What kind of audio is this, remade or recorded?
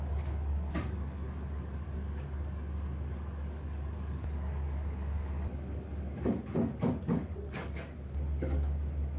remade